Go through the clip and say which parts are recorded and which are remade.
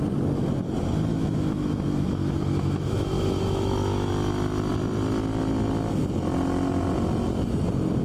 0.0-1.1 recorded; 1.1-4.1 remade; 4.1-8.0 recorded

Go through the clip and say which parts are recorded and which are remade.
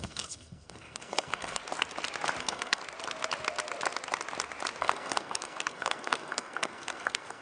0.0-1.6 remade; 1.6-2.4 recorded; 2.4-2.8 remade; 2.8-4.8 recorded; 4.8-7.4 remade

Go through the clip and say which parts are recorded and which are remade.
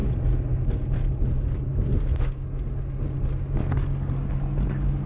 0.0-5.1 recorded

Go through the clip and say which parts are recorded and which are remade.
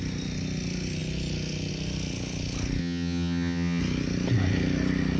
0.0-2.8 recorded; 2.8-3.8 remade; 3.8-5.2 recorded